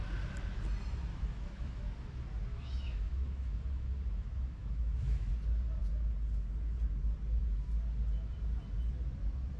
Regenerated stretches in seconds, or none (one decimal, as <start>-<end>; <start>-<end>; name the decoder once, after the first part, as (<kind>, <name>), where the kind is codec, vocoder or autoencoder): 1.1-1.8 (autoencoder, DAC-VAE); 2.5-5.3